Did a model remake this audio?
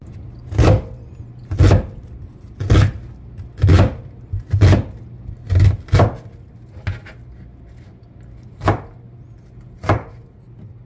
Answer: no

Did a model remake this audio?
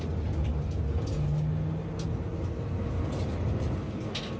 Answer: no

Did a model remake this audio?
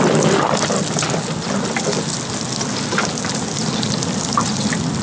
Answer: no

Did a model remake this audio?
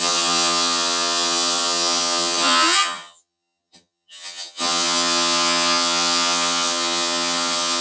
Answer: yes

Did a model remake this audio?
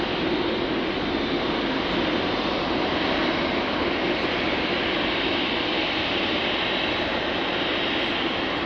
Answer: yes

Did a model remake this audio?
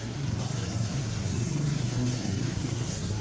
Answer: yes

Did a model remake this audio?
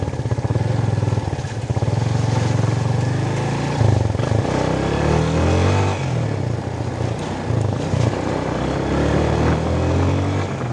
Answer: no